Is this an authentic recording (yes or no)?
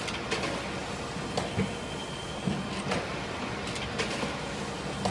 yes